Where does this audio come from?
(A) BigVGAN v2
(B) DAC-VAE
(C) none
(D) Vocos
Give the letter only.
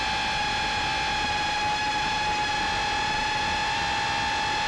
C